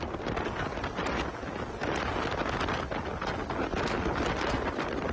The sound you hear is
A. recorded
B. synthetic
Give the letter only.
A